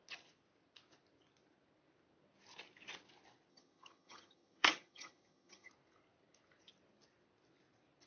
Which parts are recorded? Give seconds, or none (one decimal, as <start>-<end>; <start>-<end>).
0.0-3.5; 5.7-8.1